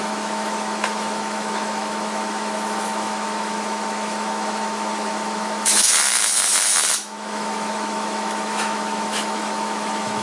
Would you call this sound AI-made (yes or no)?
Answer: yes